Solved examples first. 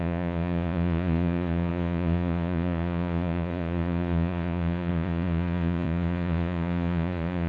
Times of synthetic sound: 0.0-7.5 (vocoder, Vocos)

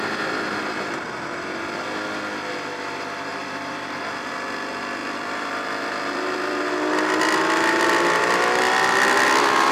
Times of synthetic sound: 3.3-4.3 (vocoder, BigVGAN v2); 5.0-6.6